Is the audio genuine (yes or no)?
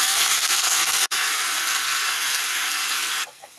no